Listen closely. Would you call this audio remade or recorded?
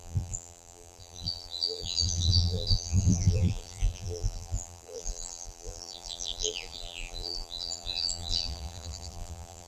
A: remade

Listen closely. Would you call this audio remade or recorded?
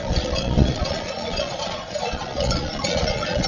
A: remade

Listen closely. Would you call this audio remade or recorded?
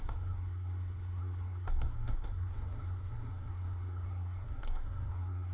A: remade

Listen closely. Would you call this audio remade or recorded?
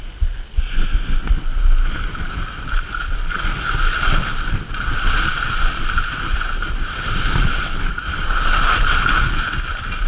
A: recorded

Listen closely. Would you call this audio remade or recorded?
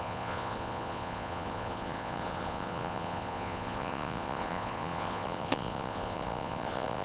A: remade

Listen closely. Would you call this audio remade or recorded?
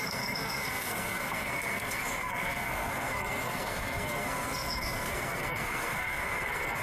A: remade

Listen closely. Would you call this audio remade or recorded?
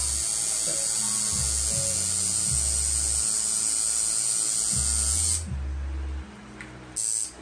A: recorded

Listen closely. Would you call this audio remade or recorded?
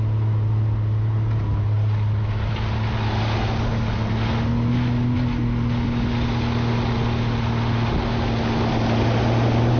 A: recorded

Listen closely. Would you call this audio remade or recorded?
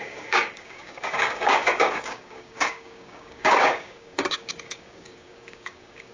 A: remade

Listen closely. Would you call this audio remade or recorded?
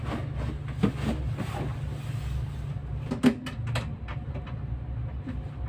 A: recorded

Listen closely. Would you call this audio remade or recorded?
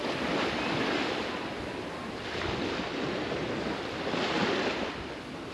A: recorded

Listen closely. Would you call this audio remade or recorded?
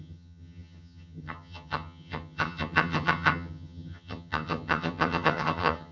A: remade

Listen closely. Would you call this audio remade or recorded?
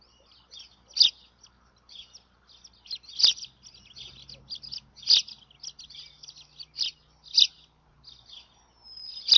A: recorded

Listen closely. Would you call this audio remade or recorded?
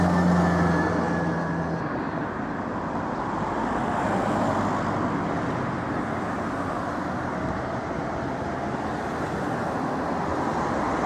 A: recorded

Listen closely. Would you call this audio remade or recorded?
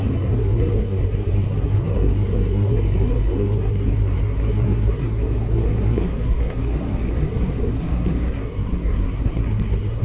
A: remade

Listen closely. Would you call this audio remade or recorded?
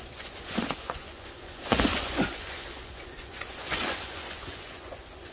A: remade